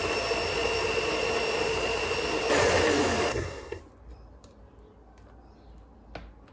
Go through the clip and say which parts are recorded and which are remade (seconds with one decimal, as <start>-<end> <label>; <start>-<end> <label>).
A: 0.0-3.3 recorded; 3.3-3.8 remade; 3.8-6.5 recorded